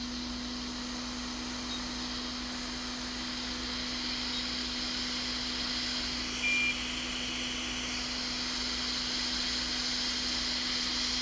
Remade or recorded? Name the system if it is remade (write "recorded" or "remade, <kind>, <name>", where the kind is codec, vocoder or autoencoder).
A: recorded